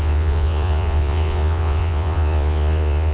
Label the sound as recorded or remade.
remade